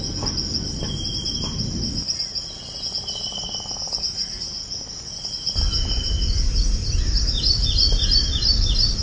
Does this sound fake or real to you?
real